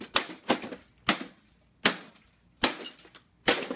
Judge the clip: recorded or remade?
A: recorded